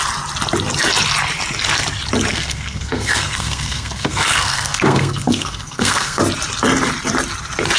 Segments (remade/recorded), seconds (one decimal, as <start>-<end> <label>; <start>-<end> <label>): 0.0-2.3 recorded; 2.3-6.2 remade; 6.2-7.8 recorded